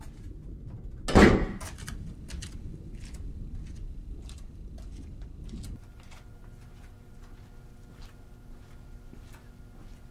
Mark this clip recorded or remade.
recorded